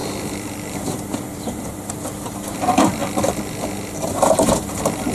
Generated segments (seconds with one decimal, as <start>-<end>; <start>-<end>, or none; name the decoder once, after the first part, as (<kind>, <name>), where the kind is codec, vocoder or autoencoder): 0.0-1.9 (vocoder, BigVGAN v2)